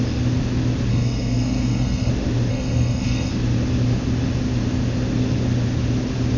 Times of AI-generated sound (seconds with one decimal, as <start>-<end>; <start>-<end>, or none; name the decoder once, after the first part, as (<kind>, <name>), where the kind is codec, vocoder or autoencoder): 0.9-2.1 (codec, SNAC); 2.5-3.3